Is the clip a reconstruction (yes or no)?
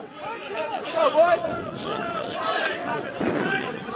yes